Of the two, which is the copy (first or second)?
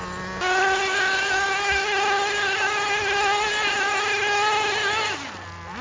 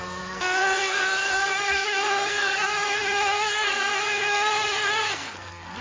second